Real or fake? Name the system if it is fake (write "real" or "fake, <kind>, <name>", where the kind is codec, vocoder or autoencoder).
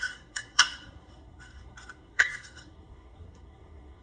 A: fake, codec, SNAC